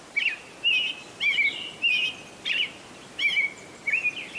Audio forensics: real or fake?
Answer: real